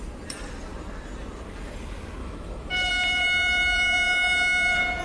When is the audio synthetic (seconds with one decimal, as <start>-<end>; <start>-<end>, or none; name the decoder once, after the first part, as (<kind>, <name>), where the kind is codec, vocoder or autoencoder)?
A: 2.2-2.9 (autoencoder, DAC-VAE)